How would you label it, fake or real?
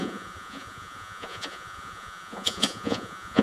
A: fake